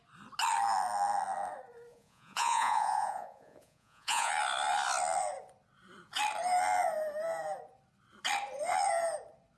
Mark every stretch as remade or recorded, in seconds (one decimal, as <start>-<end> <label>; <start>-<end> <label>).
0.0-1.9 recorded; 1.9-4.3 remade; 4.3-9.6 recorded